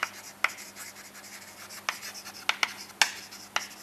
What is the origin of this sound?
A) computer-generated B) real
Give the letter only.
B